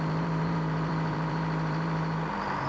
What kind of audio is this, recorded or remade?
remade